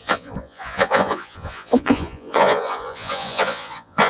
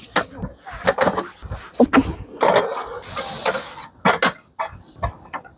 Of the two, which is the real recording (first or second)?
second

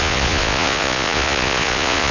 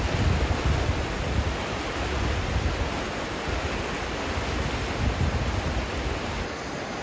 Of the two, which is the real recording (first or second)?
second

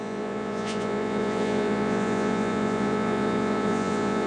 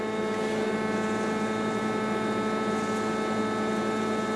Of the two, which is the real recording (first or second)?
second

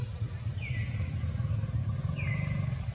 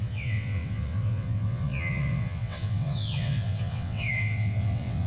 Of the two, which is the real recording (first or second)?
first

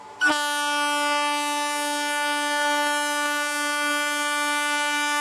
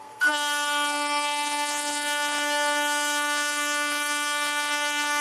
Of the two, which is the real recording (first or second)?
first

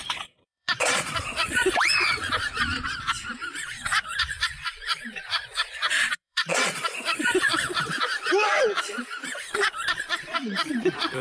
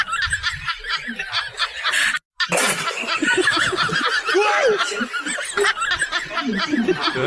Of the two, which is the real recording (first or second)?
second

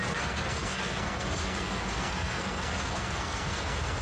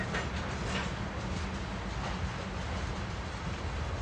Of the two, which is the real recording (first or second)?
second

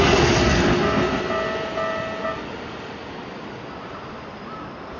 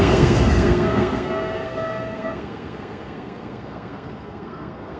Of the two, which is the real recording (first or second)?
first